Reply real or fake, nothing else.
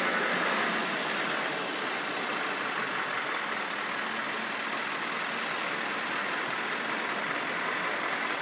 real